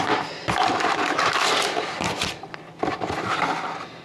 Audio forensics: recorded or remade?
recorded